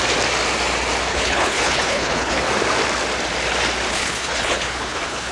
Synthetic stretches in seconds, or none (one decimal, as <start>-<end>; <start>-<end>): 1.1-2.4; 3.9-5.3